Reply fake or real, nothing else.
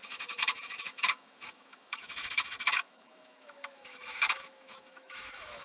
fake